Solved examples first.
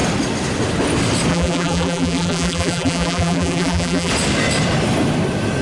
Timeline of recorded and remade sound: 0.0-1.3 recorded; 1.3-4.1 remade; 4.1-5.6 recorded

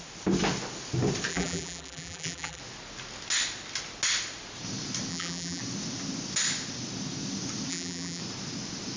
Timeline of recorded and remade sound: 0.0-1.3 recorded; 1.3-2.6 remade; 2.6-5.1 recorded; 5.1-5.6 remade; 5.6-7.7 recorded; 7.7-8.2 remade; 8.2-9.0 recorded

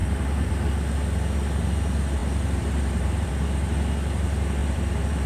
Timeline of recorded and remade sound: 0.0-0.5 remade; 0.5-2.2 recorded; 2.2-3.3 remade; 3.3-4.6 recorded; 4.6-5.3 remade

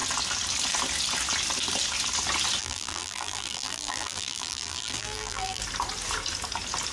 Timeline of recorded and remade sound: 0.0-2.6 recorded; 2.6-5.6 remade; 5.6-6.9 recorded

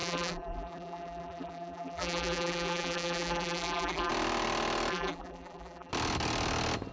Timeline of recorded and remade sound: 0.0-4.1 remade; 4.1-4.9 recorded; 4.9-5.9 remade; 5.9-6.9 recorded

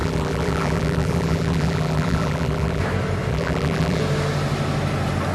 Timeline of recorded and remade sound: 0.0-2.8 remade; 2.8-3.3 recorded; 3.3-4.0 remade; 4.0-5.3 recorded

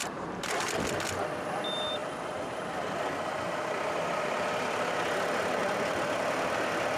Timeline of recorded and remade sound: 0.0-0.5 remade; 0.5-7.0 recorded